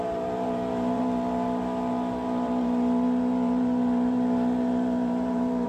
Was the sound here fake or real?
fake